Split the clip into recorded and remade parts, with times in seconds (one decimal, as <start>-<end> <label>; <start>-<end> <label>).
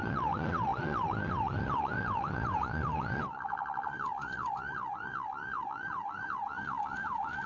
0.0-7.5 remade